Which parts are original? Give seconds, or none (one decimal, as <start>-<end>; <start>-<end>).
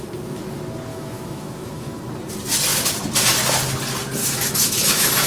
0.0-0.9; 2.0-4.2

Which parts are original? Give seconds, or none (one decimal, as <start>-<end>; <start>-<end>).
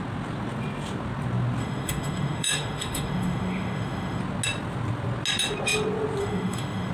0.0-1.6; 4.2-6.2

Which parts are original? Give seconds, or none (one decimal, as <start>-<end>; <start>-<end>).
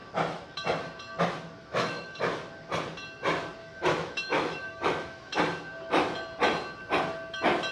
0.0-1.6; 2.2-3.6; 5.4-7.7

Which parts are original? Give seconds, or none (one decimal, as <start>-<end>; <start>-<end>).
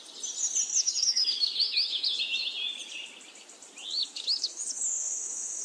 0.0-0.7; 2.2-4.0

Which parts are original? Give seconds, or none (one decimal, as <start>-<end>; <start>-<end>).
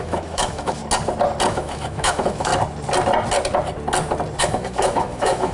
0.8-1.5; 2.5-4.4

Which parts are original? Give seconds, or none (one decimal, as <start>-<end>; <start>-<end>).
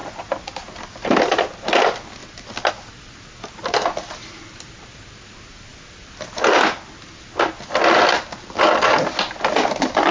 0.0-10.1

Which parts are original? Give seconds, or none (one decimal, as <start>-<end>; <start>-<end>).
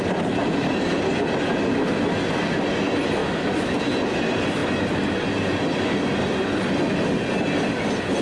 0.0-3.2; 3.8-8.2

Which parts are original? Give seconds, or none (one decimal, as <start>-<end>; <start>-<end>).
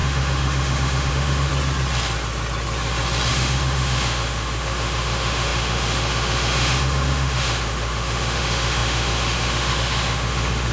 1.5-3.3